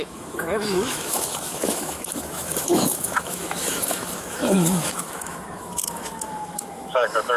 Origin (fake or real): fake